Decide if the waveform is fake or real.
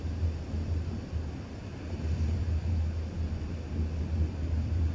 real